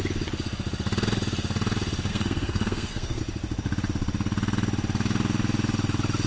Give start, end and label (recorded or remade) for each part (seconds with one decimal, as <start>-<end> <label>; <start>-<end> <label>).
0.0-2.1 recorded; 2.1-3.2 remade; 3.2-6.3 recorded